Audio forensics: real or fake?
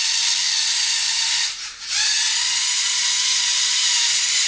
real